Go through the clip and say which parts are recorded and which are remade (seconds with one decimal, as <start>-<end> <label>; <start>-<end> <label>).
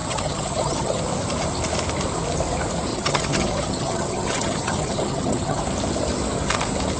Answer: 0.0-1.0 remade; 1.0-2.9 recorded; 2.9-5.6 remade; 5.6-7.0 recorded